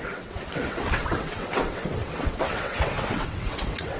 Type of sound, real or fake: fake